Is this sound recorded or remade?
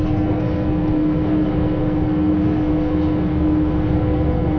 remade